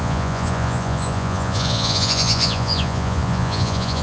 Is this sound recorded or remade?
remade